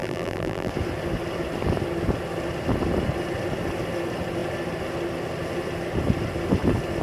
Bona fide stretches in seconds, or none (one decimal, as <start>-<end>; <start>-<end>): 0.7-7.0